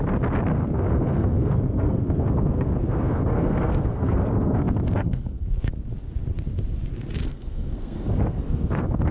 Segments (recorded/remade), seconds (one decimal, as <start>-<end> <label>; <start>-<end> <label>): 0.0-0.5 recorded; 0.5-5.7 remade; 5.7-7.2 recorded; 7.2-9.1 remade